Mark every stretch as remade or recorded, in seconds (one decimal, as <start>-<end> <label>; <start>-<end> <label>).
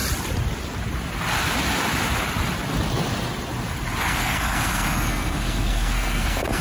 0.0-4.0 recorded; 4.0-6.6 remade